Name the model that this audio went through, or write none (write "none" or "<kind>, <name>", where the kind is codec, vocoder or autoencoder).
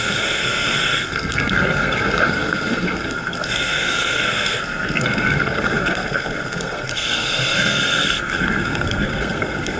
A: codec, SNAC